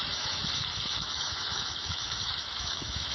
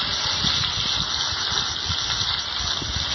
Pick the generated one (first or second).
first